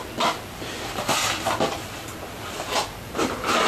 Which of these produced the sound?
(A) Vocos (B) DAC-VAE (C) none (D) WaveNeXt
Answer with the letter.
C